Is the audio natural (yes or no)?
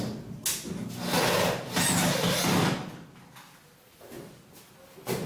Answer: yes